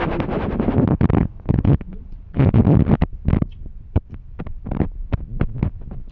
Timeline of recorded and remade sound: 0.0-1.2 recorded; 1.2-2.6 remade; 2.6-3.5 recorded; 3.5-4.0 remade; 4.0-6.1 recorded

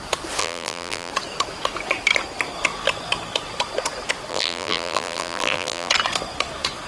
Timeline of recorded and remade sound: 0.0-0.4 recorded; 0.4-1.1 remade; 1.1-4.3 recorded; 4.3-5.9 remade; 5.9-6.9 recorded